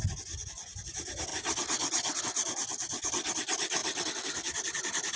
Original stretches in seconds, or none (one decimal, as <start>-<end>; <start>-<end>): 0.0-5.2